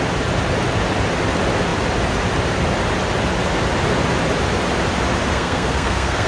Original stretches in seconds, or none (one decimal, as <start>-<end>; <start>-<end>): 0.0-5.3